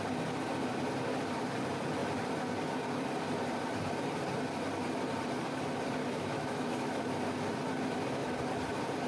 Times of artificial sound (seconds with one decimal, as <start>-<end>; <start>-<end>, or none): 6.0-7.0